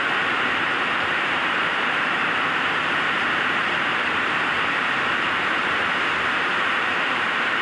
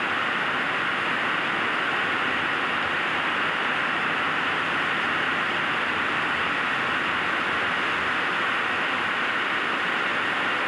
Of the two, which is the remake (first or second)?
first